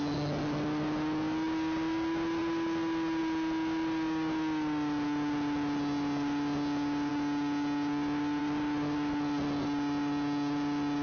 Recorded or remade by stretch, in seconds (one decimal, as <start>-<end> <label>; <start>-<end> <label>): 0.0-11.0 recorded